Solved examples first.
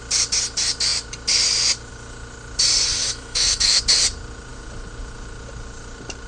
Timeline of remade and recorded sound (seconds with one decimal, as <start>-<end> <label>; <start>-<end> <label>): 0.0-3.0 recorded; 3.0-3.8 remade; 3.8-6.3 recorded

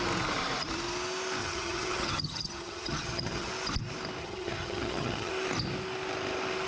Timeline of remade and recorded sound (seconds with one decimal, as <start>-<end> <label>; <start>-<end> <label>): 0.0-1.4 recorded; 1.4-3.5 remade; 3.5-4.2 recorded; 4.2-5.3 remade; 5.3-6.7 recorded

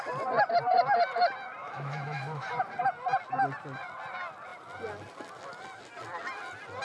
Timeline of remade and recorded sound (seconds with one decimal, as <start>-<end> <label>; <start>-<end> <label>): 0.0-1.6 recorded; 1.6-2.5 remade; 2.5-6.8 recorded